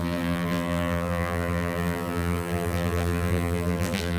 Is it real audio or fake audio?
fake